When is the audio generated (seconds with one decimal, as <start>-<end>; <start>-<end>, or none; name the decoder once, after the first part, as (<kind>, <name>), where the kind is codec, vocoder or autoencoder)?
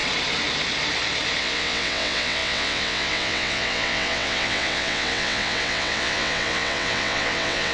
1.4-7.7 (vocoder, WaveNeXt)